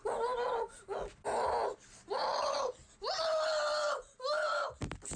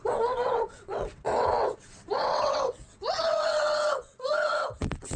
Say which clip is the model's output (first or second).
second